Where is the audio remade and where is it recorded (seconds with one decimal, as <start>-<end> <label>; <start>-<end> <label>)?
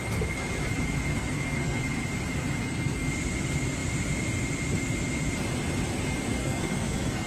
0.0-1.1 recorded; 1.1-1.8 remade; 1.8-2.6 recorded; 2.6-3.1 remade; 3.1-6.4 recorded; 6.4-7.3 remade